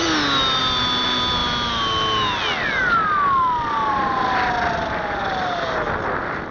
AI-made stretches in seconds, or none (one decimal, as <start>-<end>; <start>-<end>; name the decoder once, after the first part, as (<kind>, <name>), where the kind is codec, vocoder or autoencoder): none